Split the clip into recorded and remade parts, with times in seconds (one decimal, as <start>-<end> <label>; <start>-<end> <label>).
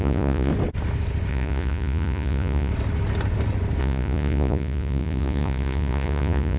0.0-0.5 remade; 0.5-1.3 recorded; 1.3-2.7 remade; 2.7-3.8 recorded; 3.8-6.6 remade